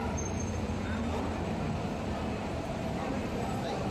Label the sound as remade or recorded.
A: remade